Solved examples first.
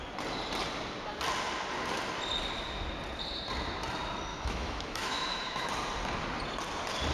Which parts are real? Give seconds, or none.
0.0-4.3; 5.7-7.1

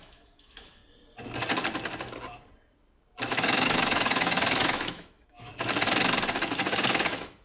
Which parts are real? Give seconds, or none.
0.8-3.3; 5.5-6.4

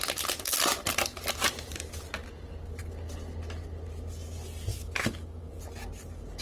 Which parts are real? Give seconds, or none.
0.0-4.7; 5.5-6.4

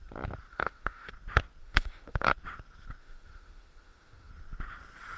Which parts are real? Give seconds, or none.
0.0-0.5; 1.1-1.6; 2.3-3.0; 4.3-5.2

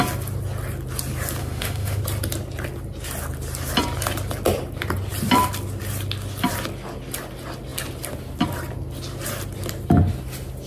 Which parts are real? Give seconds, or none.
0.0-1.4; 2.0-10.7

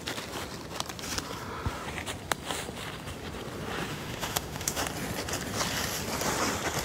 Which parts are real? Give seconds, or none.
0.0-3.9; 4.8-6.8

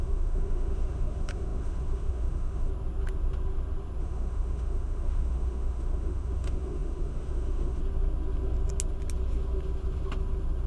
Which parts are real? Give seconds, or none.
2.7-4.0; 7.8-10.7